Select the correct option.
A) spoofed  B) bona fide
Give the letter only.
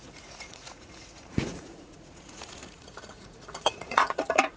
A